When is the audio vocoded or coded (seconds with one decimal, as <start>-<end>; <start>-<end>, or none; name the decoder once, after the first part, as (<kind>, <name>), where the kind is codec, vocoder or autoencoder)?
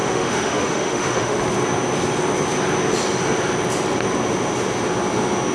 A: 0.0-1.4 (autoencoder, DAC-VAE)